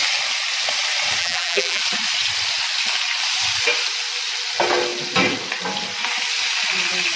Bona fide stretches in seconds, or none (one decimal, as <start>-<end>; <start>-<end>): 0.0-1.2; 1.8-7.2